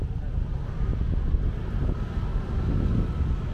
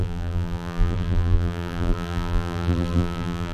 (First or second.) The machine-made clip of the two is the second